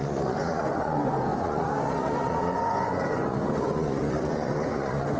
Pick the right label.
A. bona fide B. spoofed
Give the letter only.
B